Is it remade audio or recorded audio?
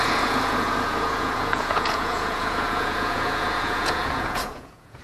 remade